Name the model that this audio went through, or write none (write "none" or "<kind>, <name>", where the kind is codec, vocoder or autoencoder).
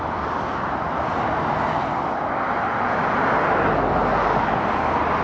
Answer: none